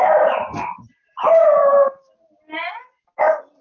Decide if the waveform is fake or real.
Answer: real